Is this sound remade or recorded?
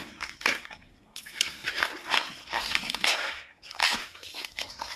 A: remade